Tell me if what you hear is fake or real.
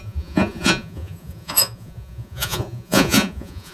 fake